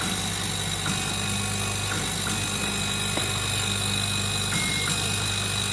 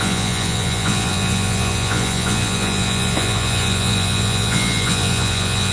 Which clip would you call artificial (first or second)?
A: second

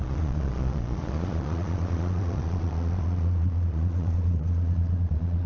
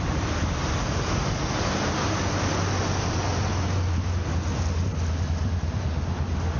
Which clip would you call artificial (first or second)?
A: first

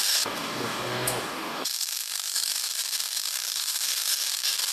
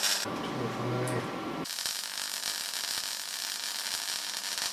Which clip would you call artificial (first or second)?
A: first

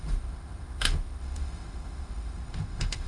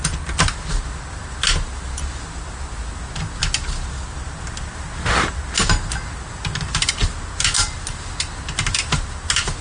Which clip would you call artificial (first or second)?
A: first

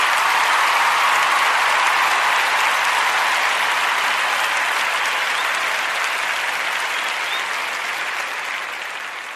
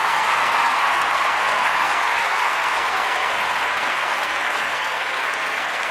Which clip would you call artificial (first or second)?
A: second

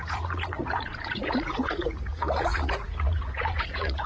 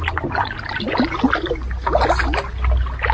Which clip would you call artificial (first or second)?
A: first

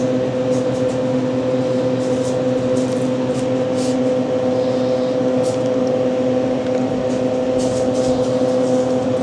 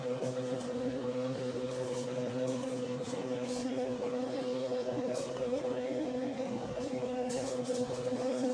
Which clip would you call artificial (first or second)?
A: second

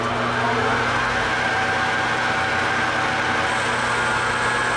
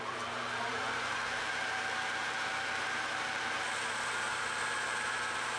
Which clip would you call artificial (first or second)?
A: second